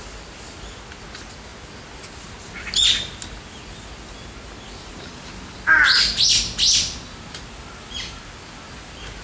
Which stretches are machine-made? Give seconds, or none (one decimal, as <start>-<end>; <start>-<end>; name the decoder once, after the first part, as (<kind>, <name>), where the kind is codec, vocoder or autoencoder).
none